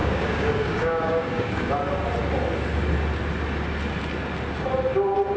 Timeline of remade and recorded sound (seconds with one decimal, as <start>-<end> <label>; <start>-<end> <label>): 0.0-1.7 remade; 1.7-5.4 recorded